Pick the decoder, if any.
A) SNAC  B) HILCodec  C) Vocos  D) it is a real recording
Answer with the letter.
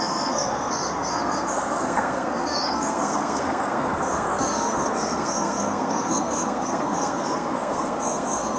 A